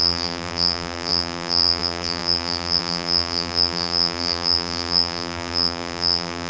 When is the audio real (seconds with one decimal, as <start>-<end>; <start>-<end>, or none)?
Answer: none